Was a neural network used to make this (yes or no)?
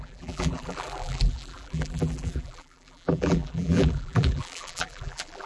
yes